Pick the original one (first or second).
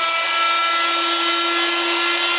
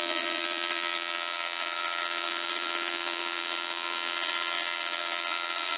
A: first